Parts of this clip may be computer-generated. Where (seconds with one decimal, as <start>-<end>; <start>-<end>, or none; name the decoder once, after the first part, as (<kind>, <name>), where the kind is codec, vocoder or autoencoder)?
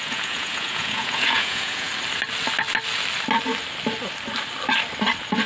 0.0-1.9 (vocoder, Vocos)